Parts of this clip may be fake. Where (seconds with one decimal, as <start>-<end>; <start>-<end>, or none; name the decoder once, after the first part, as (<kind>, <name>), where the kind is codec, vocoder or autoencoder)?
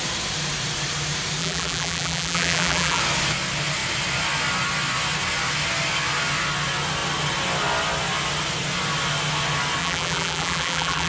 1.4-3.0 (vocoder, BigVGAN v2); 9.8-11.1